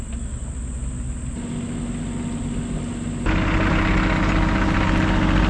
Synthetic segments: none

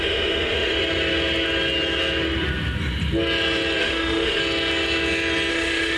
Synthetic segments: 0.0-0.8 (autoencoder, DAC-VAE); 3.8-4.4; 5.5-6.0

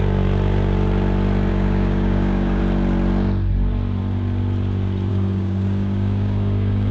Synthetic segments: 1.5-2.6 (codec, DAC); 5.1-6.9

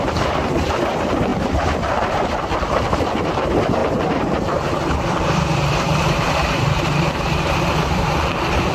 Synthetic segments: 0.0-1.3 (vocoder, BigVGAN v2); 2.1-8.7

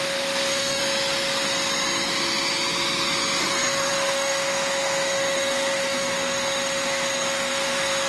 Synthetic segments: 0.0-0.8 (autoencoder, DAC-VAE); 3.4-8.1

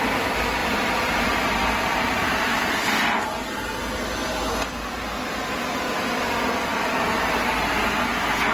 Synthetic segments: 0.6-2.7 (vocoder, BigVGAN v2)

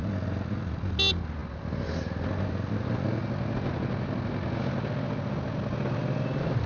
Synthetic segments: none

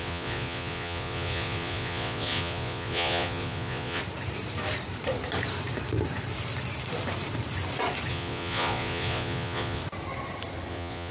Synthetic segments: 0.0-4.0 (vocoder, Vocos); 8.1-9.8; 10.7-11.1